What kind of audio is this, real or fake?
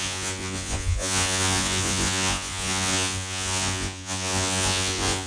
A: fake